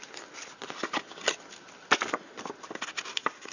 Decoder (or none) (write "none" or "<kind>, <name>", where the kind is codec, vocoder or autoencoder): none